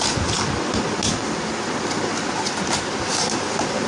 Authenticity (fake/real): real